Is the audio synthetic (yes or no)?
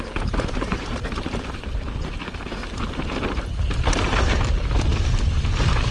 yes